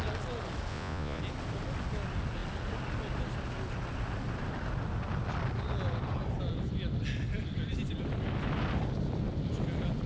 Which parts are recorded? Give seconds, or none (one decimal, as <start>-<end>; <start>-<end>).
0.0-0.7; 1.2-10.1